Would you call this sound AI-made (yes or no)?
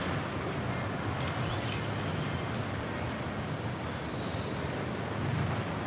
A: no